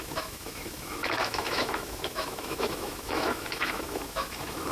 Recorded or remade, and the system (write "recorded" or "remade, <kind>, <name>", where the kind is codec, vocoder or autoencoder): remade, autoencoder, DAC-VAE